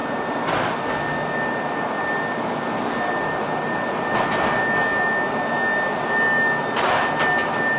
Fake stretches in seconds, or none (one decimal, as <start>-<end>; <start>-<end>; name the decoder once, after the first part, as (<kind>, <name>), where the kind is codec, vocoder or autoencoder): none